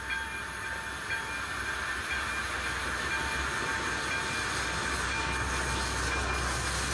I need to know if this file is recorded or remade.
recorded